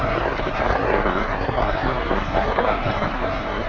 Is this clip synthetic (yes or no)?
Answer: yes